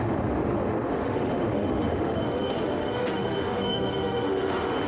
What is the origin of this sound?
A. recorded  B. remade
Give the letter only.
B